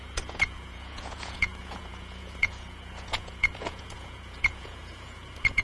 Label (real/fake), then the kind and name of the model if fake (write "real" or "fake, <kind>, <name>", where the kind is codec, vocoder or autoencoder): fake, vocoder, Vocos